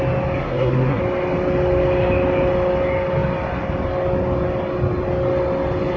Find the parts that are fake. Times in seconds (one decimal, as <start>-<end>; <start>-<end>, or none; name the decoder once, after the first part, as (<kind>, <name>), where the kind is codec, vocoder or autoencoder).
0.4-1.0 (codec, SNAC)